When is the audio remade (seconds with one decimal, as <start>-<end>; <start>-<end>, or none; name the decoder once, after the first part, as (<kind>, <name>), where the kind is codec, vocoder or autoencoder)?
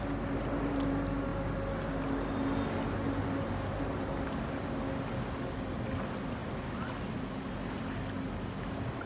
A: none